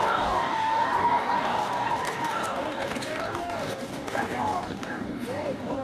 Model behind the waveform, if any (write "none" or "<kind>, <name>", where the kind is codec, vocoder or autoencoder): codec, DAC